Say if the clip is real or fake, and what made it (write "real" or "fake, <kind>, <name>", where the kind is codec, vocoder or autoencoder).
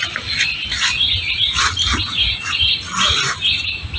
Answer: real